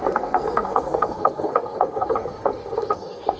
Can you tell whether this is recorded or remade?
remade